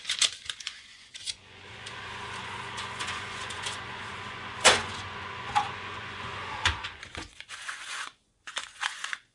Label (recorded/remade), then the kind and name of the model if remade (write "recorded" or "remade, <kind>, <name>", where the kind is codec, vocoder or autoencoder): remade, vocoder, Vocos